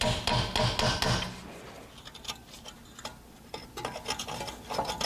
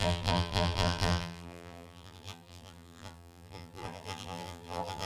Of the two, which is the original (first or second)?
first